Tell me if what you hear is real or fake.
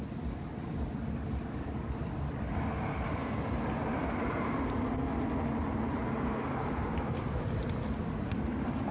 real